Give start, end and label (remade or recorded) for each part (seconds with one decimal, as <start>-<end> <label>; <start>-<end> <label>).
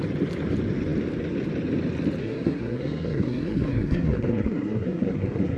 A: 0.0-2.2 recorded; 2.2-5.6 remade